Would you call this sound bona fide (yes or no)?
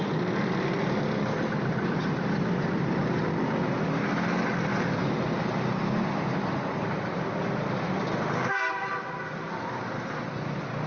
yes